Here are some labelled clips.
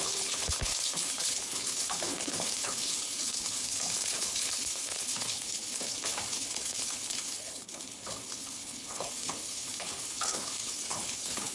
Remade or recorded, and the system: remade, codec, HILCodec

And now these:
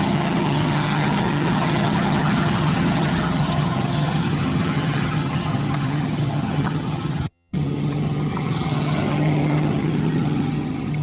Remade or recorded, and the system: remade, vocoder, HiFi-GAN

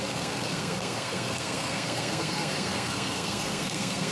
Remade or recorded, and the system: remade, codec, SNAC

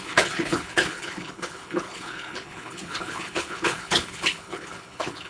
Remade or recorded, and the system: remade, codec, HILCodec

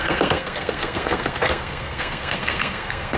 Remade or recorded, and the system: remade, codec, SNAC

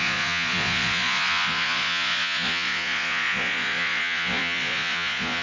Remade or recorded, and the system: remade, vocoder, Vocos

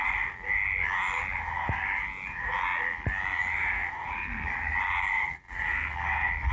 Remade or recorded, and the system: recorded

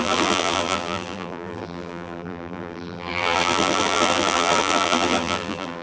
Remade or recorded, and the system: remade, vocoder, BigVGAN v2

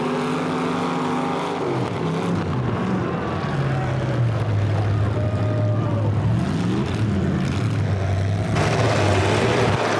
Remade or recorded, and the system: recorded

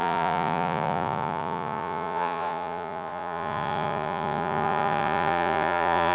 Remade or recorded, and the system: remade, vocoder, Vocos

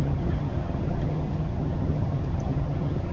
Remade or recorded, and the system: remade, vocoder, HiFi-GAN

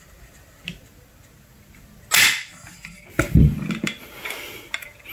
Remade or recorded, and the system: recorded